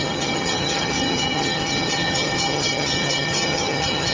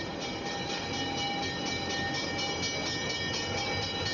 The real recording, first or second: second